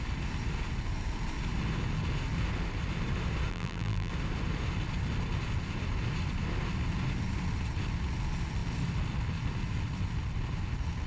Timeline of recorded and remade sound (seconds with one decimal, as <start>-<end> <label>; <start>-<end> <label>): 0.0-3.5 recorded; 3.5-4.1 remade; 4.1-11.1 recorded